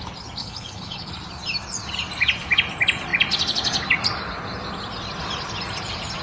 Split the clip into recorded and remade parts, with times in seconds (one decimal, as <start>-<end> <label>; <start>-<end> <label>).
0.0-0.4 recorded; 0.4-1.1 remade; 1.1-6.2 recorded